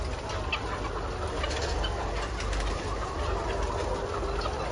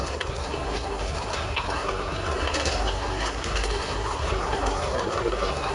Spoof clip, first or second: second